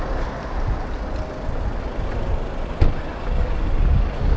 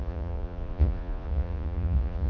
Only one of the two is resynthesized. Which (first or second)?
second